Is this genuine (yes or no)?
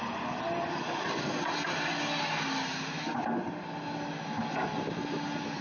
yes